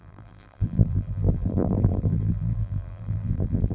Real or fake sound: fake